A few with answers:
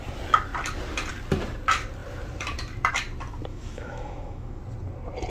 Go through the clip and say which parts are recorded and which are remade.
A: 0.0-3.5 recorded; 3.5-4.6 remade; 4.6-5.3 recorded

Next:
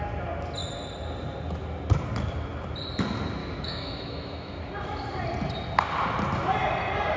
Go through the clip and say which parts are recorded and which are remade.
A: 0.0-3.4 recorded; 3.4-4.7 remade; 4.7-7.2 recorded